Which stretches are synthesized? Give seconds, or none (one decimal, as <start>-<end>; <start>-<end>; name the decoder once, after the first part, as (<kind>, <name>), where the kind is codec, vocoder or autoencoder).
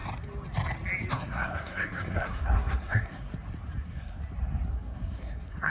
1.1-3.3 (codec, SNAC); 3.8-4.2; 4.7-5.7